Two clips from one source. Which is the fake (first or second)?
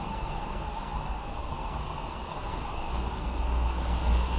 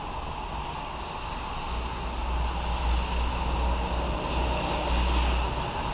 first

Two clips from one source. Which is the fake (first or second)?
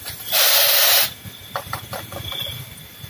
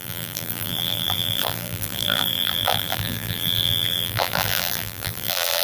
second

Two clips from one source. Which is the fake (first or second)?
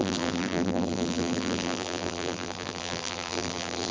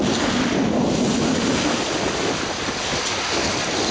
first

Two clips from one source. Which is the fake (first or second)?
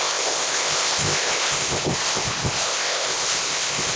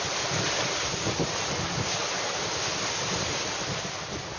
first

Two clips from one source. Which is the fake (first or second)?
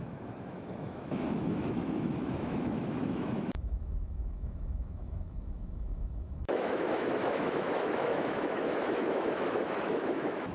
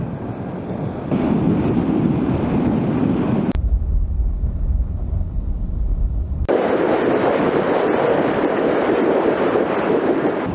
first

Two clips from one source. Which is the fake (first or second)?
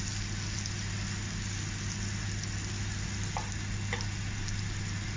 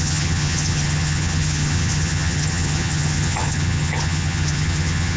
second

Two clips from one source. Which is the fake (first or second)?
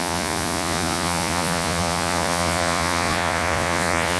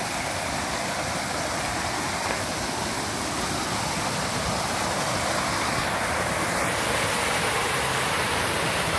first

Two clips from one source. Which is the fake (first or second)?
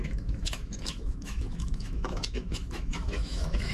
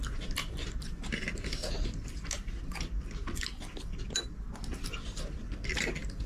first